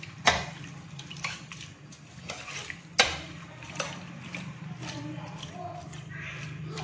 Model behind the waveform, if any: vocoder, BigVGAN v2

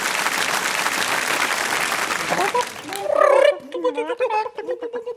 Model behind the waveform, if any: vocoder, BigVGAN v2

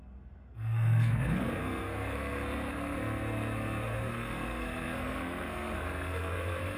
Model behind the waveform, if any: codec, SNAC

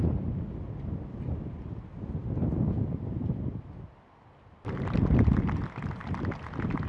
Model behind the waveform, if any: none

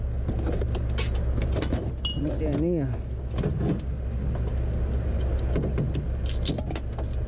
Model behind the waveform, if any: none